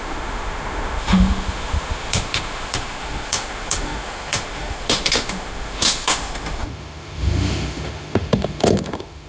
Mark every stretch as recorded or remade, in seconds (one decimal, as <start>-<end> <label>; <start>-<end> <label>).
0.0-9.3 remade